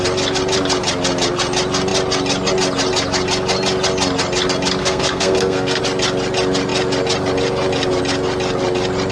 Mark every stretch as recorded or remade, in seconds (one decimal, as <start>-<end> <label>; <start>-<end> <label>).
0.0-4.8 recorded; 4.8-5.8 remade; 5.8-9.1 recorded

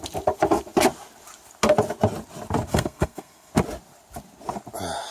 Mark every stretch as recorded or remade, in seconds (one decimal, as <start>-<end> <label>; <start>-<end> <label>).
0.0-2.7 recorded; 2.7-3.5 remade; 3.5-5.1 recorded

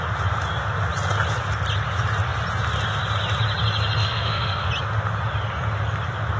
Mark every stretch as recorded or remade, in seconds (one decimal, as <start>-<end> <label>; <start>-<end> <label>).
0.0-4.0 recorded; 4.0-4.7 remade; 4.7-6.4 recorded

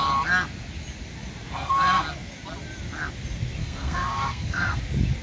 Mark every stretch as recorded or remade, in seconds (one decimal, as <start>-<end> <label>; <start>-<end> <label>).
0.0-3.6 recorded; 3.6-4.8 remade; 4.8-5.2 recorded

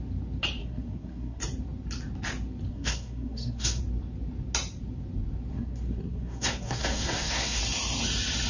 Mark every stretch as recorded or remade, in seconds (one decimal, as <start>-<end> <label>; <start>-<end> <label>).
0.0-0.6 recorded; 0.6-1.4 remade; 1.4-2.7 recorded; 2.7-3.8 remade; 3.8-5.5 recorded; 5.5-7.6 remade; 7.6-8.5 recorded